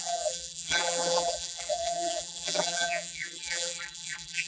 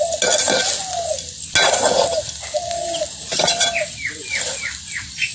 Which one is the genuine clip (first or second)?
second